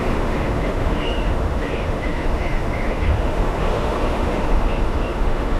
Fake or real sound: fake